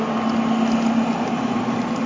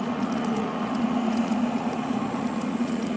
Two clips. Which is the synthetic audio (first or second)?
second